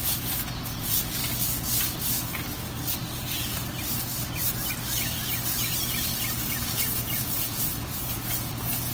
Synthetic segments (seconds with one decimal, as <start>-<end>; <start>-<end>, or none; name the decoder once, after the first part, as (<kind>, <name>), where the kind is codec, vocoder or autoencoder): 0.0-1.2 (vocoder, Vocos); 6.5-8.9